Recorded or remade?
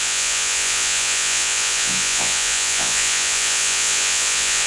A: remade